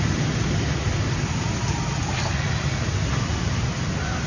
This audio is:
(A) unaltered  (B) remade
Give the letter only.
A